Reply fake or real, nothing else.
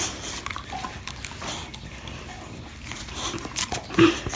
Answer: real